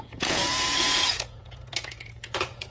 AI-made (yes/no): yes